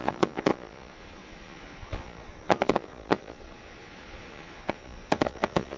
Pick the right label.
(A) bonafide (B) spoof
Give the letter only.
B